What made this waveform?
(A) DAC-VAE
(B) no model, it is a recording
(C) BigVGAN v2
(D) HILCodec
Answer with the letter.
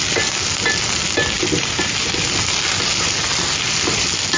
B